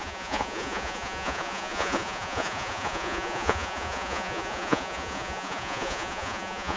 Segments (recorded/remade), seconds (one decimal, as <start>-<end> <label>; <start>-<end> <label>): 0.0-6.8 remade